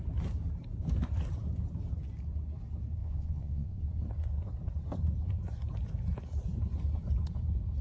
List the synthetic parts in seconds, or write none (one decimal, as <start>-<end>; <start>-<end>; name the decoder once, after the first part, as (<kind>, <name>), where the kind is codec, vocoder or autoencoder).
3.0-3.9 (vocoder, Vocos)